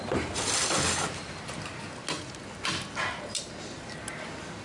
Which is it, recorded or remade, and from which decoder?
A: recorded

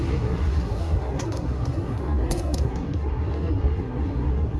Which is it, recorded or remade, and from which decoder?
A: remade, codec, SNAC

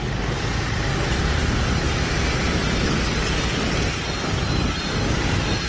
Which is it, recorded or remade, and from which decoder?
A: recorded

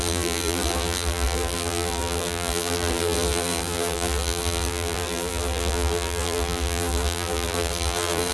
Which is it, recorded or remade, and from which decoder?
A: remade, vocoder, BigVGAN v2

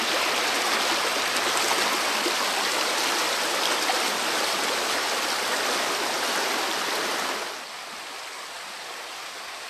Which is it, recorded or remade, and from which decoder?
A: recorded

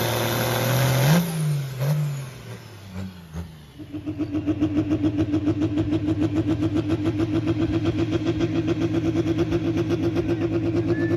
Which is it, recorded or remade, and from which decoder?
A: recorded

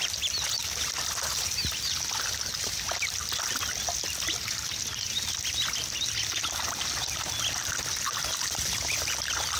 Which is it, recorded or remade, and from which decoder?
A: recorded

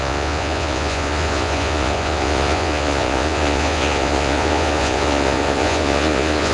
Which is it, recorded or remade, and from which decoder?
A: remade, vocoder, Vocos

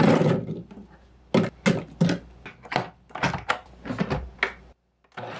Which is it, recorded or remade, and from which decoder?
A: recorded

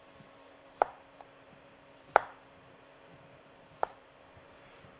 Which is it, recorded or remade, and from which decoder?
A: remade, vocoder, BigVGAN v2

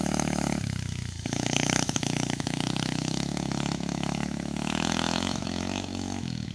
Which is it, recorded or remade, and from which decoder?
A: remade, autoencoder, DAC-VAE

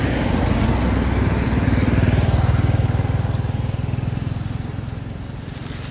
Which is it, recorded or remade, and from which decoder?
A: recorded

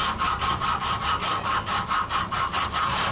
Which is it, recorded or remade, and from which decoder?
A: recorded